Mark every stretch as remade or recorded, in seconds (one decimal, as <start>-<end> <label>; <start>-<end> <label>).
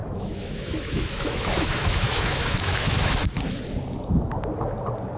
0.0-3.1 remade; 3.1-5.2 recorded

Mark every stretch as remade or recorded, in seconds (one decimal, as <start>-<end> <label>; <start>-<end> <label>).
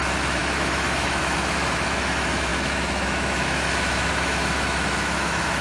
0.0-5.6 remade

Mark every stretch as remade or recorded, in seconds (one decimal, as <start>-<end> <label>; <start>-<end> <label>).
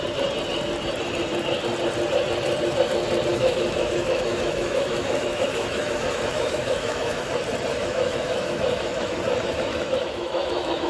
0.0-3.3 recorded; 3.3-7.3 remade; 7.3-7.8 recorded; 7.8-9.2 remade; 9.2-9.7 recorded; 9.7-10.9 remade